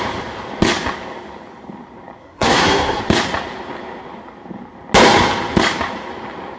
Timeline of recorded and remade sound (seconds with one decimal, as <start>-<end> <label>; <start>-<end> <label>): 0.0-2.2 recorded; 2.2-3.0 remade; 3.0-6.6 recorded